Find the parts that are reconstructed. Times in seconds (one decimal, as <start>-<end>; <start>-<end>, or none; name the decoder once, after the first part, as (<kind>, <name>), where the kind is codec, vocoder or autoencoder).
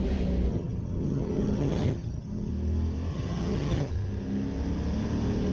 0.5-2.5 (vocoder, HiFi-GAN); 3.1-3.9